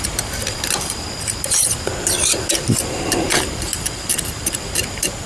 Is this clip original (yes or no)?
yes